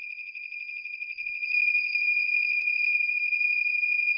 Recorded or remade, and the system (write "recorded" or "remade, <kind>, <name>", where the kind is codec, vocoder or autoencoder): remade, vocoder, Vocos